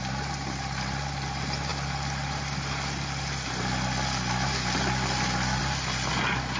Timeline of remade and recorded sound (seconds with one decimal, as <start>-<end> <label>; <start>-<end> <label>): 0.0-6.6 recorded